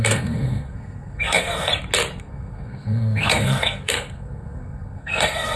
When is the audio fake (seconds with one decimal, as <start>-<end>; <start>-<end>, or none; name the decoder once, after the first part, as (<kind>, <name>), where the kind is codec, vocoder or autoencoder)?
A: 0.0-1.7 (codec, SNAC); 2.2-5.6